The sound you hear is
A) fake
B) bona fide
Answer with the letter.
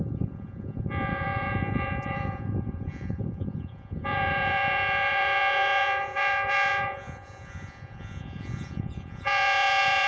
A